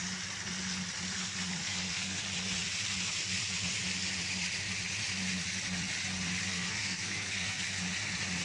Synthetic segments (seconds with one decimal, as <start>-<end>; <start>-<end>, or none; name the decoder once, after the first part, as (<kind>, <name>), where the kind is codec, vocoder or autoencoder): 1.6-2.2 (codec, SNAC); 6.5-7.8